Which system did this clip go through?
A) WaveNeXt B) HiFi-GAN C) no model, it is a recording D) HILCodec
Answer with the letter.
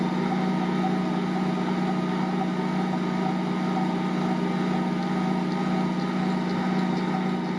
C